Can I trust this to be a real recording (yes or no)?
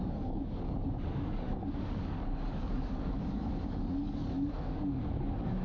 no